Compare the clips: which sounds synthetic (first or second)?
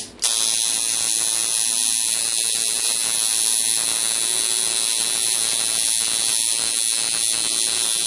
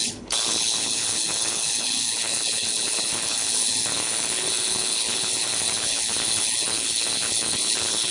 second